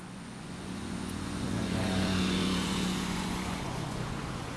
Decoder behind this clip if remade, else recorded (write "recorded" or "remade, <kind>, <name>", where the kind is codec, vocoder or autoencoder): remade, vocoder, Vocos